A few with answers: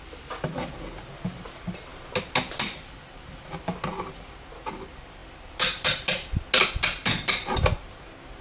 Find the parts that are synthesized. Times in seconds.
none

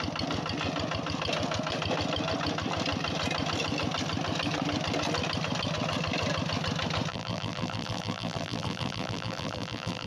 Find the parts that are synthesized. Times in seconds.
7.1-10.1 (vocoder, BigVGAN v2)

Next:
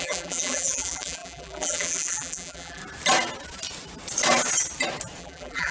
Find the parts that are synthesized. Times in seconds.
0.0-2.8 (vocoder, BigVGAN v2); 5.2-5.7

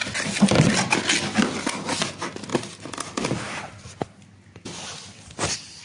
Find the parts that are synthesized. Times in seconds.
0.0-1.0 (vocoder, BigVGAN v2); 2.5-3.0

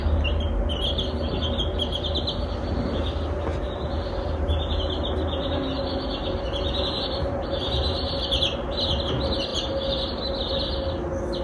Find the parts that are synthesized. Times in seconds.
none

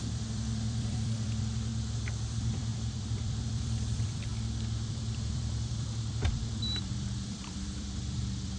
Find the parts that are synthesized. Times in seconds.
0.0-1.7 (vocoder, BigVGAN v2); 2.3-4.3; 4.9-8.6